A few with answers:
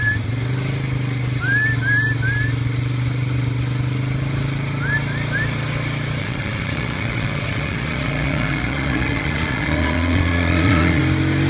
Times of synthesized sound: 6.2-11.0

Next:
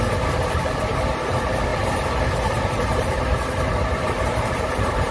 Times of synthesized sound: 1.7-5.1

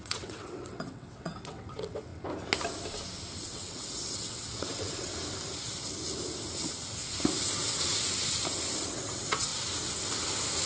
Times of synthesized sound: 0.0-2.1; 3.4-5.1; 8.8-9.5

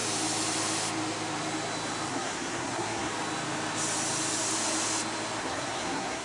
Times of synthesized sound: 2.1-3.1; 5.4-6.2

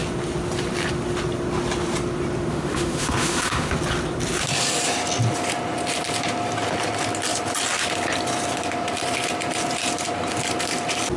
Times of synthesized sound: 2.5-3.7